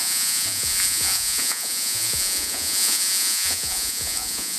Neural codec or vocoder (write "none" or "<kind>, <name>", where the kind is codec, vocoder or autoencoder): vocoder, Vocos